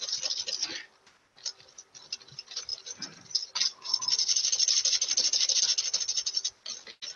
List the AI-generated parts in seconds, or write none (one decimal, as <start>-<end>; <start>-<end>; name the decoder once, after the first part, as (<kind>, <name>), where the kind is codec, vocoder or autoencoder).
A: none